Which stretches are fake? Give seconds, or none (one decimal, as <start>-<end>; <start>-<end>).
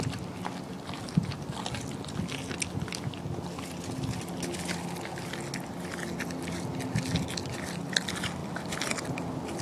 none